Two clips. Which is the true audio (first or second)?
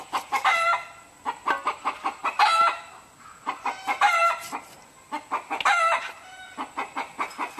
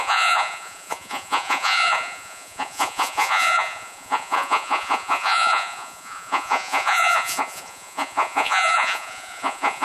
first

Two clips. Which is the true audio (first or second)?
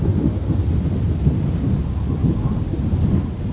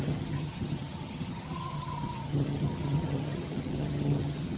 first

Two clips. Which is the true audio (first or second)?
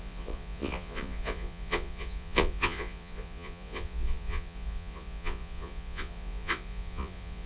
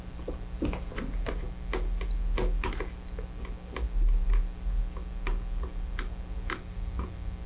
second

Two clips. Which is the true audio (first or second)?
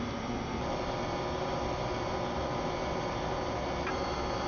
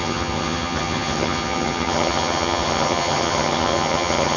first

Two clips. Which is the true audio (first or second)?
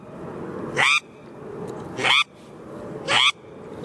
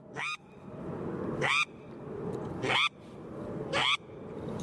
first